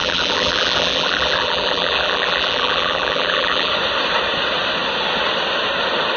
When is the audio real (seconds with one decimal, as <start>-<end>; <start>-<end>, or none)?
3.7-6.2